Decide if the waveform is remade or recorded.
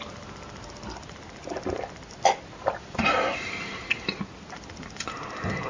recorded